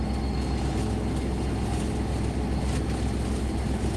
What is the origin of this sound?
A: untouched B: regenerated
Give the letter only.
A